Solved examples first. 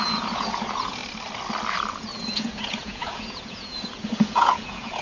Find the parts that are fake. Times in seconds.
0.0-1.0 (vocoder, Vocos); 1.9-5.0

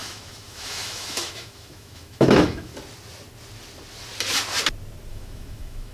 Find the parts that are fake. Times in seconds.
0.0-2.7 (autoencoder, DAC-VAE); 5.1-5.9

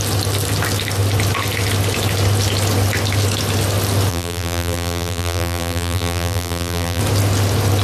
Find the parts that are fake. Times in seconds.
4.1-7.0 (vocoder, BigVGAN v2)

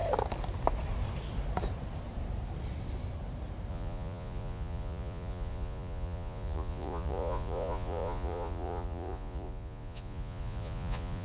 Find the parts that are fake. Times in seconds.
3.7-11.2 (vocoder, Vocos)

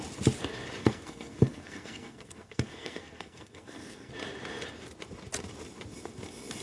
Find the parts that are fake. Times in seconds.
0.8-4.1 (codec, SNAC)

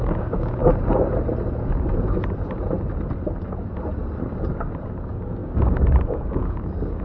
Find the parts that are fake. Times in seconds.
0.0-0.6 (codec, DAC); 4.8-7.0